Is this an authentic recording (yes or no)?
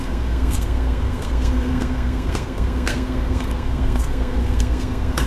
no